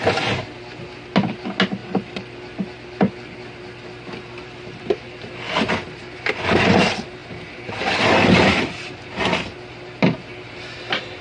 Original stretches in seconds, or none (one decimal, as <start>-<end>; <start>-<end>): 0.0-1.8; 3.4-7.2; 8.8-11.2